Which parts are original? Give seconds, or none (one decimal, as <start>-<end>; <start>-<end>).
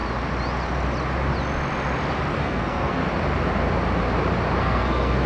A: 0.0-2.4; 3.0-4.6